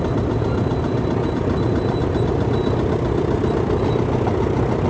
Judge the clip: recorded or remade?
recorded